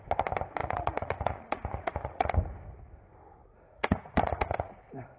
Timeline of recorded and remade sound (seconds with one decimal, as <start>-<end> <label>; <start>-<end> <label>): 0.0-0.6 recorded; 0.6-2.4 remade; 2.4-3.4 recorded; 3.4-4.8 remade; 4.8-5.2 recorded